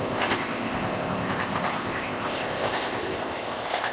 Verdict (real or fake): fake